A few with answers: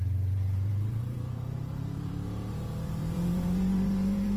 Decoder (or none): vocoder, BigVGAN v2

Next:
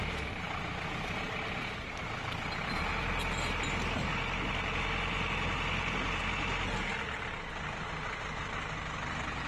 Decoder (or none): none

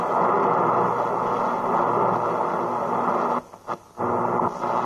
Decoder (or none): none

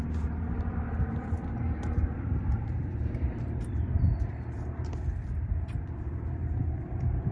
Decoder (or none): vocoder, BigVGAN v2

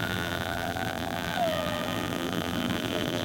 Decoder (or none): vocoder, BigVGAN v2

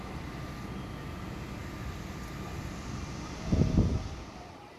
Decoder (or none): none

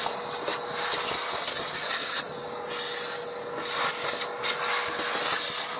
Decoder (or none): none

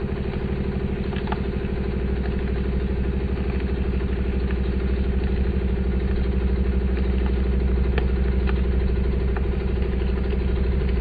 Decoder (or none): none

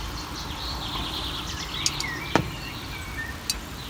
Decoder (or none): none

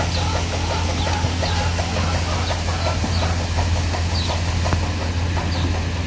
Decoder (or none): none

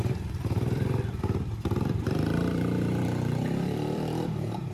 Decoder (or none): vocoder, BigVGAN v2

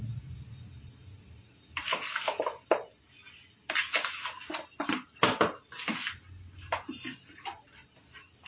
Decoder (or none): none